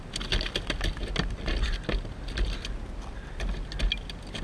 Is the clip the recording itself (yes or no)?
yes